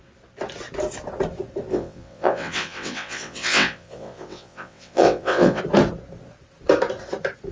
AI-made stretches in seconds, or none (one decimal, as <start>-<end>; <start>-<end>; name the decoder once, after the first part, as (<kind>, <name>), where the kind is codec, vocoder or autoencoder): 1.7-5.6 (vocoder, WaveNeXt)